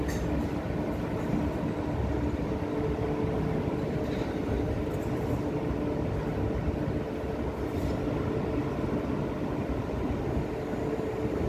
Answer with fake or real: real